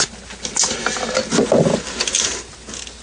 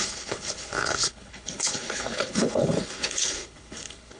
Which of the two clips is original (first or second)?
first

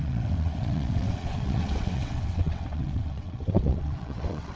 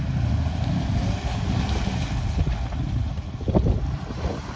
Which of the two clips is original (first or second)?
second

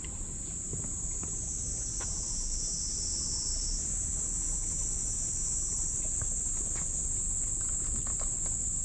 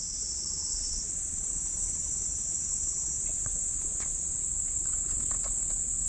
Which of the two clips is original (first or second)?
first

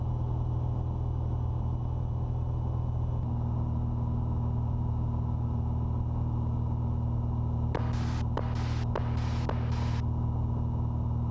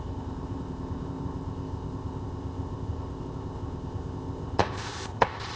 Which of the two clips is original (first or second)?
first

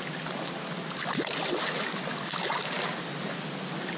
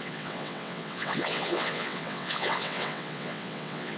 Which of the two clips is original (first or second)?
first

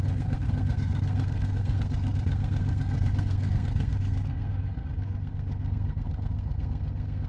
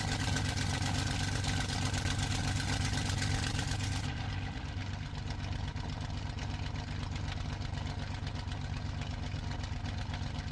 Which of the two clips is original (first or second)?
second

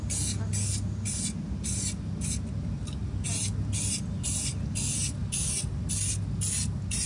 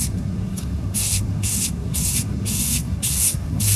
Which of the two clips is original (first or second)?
first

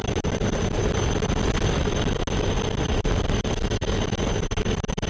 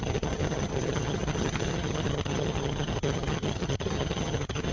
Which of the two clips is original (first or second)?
first